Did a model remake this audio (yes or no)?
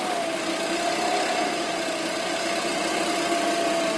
no